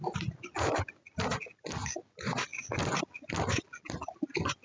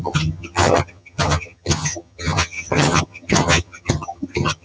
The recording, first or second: first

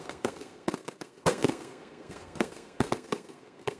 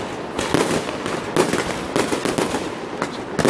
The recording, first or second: second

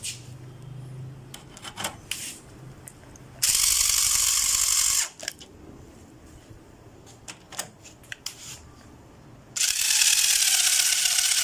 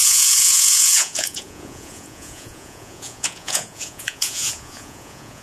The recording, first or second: first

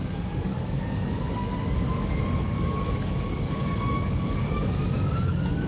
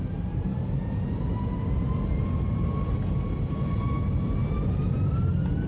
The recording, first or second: second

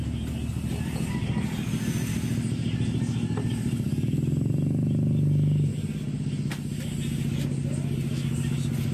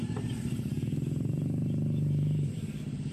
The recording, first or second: first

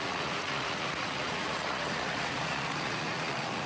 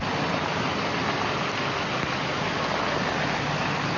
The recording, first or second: second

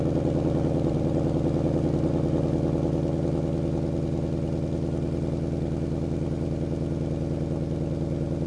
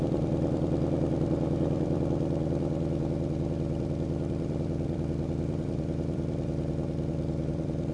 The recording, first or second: first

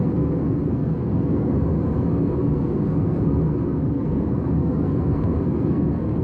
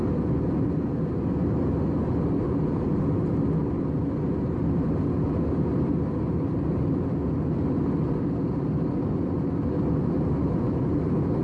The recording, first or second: second